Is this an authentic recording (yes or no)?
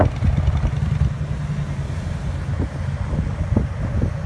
yes